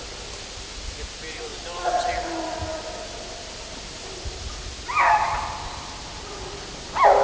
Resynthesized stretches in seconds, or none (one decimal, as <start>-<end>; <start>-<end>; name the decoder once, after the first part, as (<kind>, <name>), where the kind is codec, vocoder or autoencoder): none